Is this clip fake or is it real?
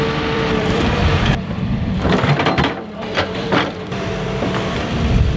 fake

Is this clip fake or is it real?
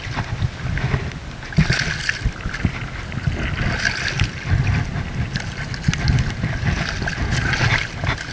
real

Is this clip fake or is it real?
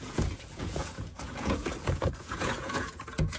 fake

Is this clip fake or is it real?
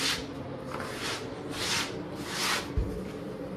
fake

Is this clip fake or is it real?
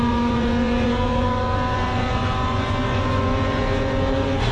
fake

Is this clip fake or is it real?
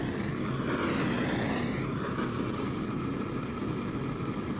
real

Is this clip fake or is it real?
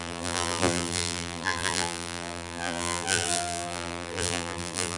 fake